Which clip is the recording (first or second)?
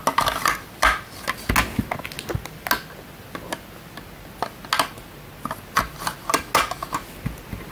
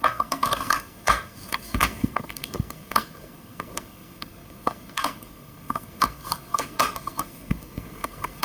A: first